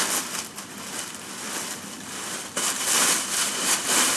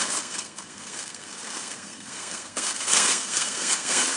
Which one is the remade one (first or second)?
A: second